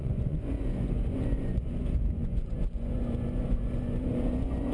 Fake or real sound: fake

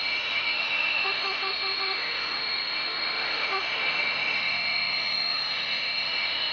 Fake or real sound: fake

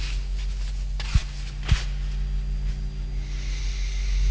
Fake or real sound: real